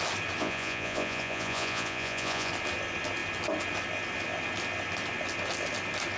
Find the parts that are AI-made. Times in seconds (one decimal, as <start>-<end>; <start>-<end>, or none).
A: 0.4-2.5